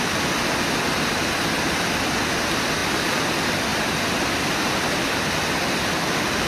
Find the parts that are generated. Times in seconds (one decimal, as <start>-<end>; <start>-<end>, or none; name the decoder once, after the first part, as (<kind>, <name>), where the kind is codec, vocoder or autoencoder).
2.8-3.3 (vocoder, BigVGAN v2); 3.7-4.3